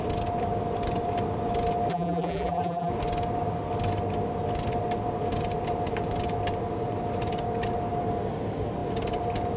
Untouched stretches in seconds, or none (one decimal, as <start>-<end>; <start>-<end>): 0.0-1.9; 2.9-9.6